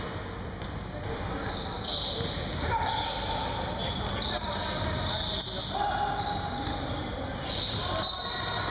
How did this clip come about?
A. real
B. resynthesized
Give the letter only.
A